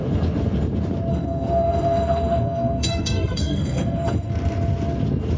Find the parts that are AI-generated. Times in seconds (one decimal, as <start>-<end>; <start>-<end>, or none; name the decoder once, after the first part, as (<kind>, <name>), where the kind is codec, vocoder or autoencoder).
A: 1.1-4.3 (codec, SNAC)

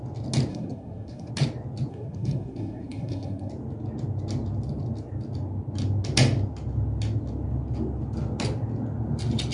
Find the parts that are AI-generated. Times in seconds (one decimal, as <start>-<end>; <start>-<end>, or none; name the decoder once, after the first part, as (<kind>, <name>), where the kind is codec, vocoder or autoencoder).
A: 0.5-1.3 (codec, SNAC); 1.9-3.5

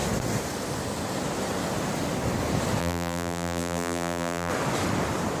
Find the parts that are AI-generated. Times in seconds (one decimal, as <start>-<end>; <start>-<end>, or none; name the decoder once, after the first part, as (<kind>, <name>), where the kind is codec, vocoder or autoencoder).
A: 2.8-4.5 (vocoder, BigVGAN v2)

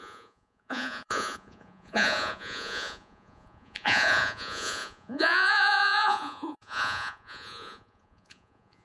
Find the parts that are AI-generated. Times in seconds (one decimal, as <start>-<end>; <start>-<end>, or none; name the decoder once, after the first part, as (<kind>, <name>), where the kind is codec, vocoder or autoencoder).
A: 0.0-8.8 (vocoder, Vocos)

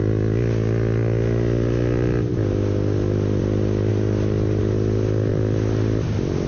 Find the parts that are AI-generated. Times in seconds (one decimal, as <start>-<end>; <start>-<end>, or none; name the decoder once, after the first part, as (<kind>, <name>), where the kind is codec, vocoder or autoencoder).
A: 3.9-4.6 (vocoder, BigVGAN v2); 5.3-6.5

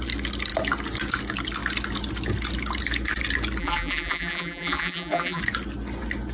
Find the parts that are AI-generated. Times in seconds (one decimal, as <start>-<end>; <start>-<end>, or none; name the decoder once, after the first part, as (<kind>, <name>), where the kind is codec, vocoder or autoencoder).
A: 3.6-5.4 (vocoder, BigVGAN v2)